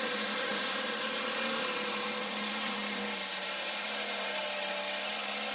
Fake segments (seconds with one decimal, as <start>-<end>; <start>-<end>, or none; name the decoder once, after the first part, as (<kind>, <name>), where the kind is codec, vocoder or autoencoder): 0.0-0.5 (vocoder, BigVGAN v2); 2.2-4.4; 5.1-5.5